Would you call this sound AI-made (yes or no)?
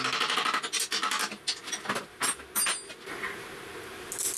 no